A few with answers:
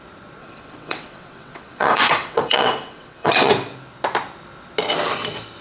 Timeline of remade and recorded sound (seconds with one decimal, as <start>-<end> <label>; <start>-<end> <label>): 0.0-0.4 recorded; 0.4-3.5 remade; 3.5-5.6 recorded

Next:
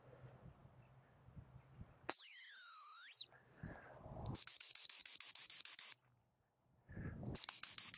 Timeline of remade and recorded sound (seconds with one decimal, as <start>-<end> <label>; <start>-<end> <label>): 0.0-8.0 recorded

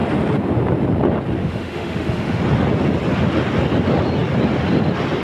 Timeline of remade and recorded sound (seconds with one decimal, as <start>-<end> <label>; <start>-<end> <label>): 0.0-1.4 recorded; 1.4-2.4 remade; 2.4-5.2 recorded

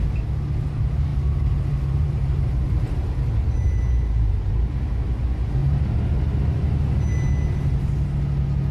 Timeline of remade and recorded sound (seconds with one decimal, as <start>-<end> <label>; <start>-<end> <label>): 0.0-1.1 recorded; 1.1-4.5 remade; 4.5-8.7 recorded

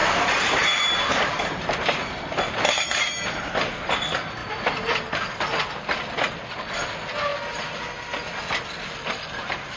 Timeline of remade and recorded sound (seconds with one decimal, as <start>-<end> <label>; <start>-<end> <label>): 0.0-3.8 remade; 3.8-9.8 recorded

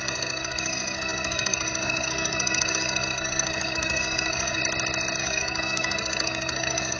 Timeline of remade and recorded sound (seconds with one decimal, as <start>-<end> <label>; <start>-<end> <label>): 0.0-4.6 remade; 4.6-5.2 recorded; 5.2-7.0 remade